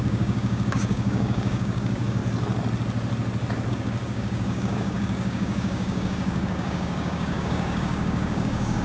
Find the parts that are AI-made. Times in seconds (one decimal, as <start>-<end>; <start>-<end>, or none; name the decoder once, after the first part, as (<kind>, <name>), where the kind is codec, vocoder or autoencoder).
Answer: 0.0-2.2 (codec, DAC); 3.7-8.8